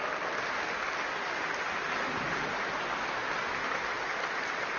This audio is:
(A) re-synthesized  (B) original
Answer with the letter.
B